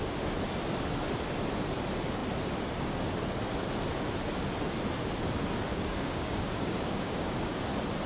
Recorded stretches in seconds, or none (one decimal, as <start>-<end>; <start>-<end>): 0.0-5.7; 7.6-8.1